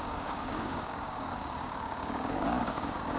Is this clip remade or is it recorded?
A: remade